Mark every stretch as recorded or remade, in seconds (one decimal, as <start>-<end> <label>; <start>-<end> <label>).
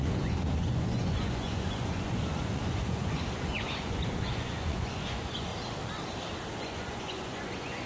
0.0-5.5 remade; 5.5-6.6 recorded; 6.6-7.9 remade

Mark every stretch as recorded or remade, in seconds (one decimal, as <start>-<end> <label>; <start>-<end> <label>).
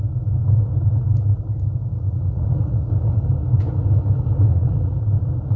0.0-1.9 recorded; 1.9-2.9 remade; 2.9-4.5 recorded; 4.5-5.0 remade; 5.0-5.6 recorded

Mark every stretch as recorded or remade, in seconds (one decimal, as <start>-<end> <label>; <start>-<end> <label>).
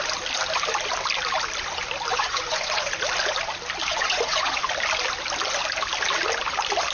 0.0-2.1 recorded; 2.1-2.9 remade; 2.9-3.9 recorded; 3.9-4.6 remade; 4.6-6.9 recorded